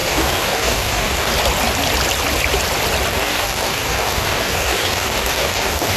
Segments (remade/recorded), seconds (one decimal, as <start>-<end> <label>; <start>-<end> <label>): 0.0-1.3 remade; 1.3-3.1 recorded; 3.1-6.0 remade